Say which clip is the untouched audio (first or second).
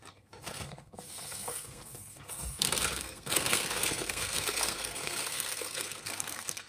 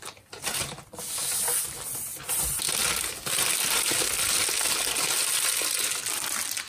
second